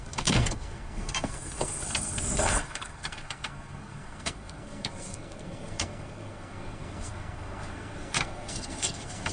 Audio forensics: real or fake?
fake